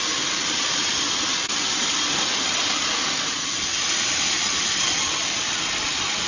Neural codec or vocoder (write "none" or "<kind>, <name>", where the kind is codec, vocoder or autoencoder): none